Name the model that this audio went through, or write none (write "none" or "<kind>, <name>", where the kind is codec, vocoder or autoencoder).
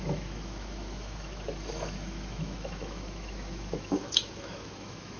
autoencoder, DAC-VAE